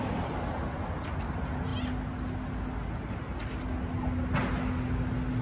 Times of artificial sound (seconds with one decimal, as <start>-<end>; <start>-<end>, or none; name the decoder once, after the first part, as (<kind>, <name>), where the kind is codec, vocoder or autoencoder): none